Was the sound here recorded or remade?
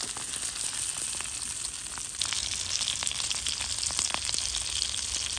recorded